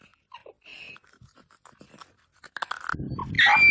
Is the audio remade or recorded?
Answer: recorded